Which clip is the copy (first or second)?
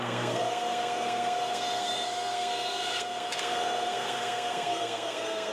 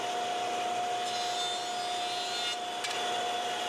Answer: first